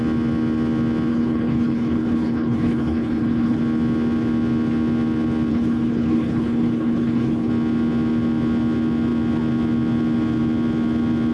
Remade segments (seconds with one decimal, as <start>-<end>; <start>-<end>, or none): 1.1-3.6; 5.5-7.5